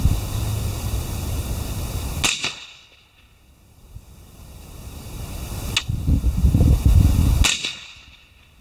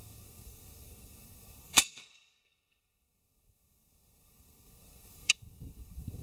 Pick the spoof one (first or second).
second